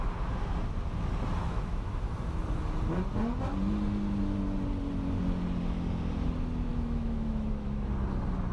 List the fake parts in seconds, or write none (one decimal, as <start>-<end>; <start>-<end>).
1.4-2.0; 6.7-7.9